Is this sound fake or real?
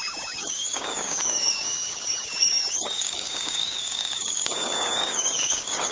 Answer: fake